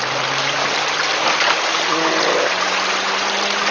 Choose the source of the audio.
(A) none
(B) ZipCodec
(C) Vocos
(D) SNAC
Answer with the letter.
A